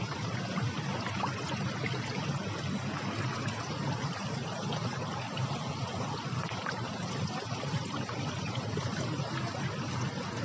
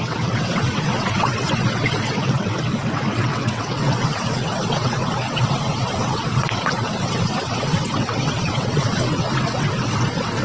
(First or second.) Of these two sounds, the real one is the first